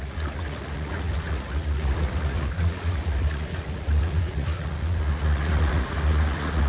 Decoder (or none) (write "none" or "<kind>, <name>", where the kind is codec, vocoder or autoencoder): vocoder, Vocos